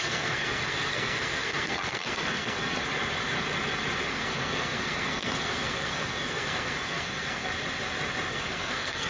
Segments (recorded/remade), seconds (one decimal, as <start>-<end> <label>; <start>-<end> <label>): 0.0-2.8 remade; 2.8-4.1 recorded; 4.1-7.5 remade; 7.5-8.3 recorded; 8.3-9.1 remade